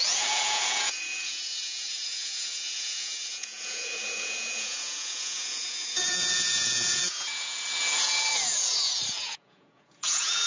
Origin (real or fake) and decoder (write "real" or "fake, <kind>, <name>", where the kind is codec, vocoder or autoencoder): fake, vocoder, Vocos